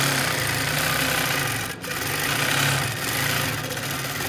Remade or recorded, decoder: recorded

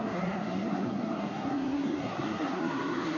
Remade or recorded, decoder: remade, codec, SNAC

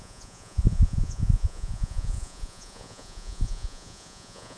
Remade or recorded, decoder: remade, vocoder, Vocos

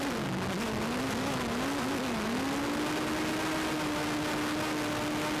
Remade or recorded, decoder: recorded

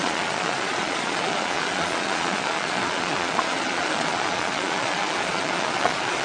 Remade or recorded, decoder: remade, vocoder, Vocos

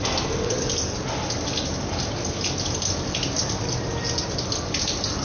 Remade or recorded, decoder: recorded